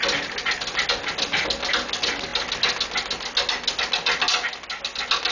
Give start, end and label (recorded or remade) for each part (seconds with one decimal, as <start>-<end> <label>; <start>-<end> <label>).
0.0-5.3 recorded

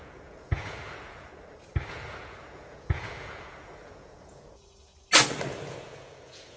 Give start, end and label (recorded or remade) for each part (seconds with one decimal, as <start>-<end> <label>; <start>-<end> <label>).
0.0-1.3 remade; 1.3-1.9 recorded; 1.9-4.9 remade; 4.9-5.7 recorded; 5.7-6.6 remade

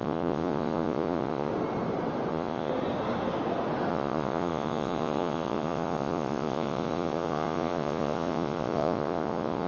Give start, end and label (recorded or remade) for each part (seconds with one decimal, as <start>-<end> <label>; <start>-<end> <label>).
0.0-1.5 remade; 1.5-2.3 recorded; 2.3-2.7 remade; 2.7-3.9 recorded; 3.9-9.7 remade